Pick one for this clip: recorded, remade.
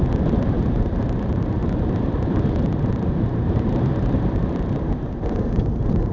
remade